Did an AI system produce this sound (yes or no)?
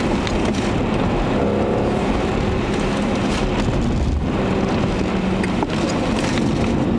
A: no